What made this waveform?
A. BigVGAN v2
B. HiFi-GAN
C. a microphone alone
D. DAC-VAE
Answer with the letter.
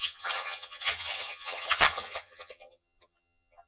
B